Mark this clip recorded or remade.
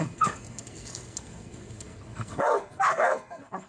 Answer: remade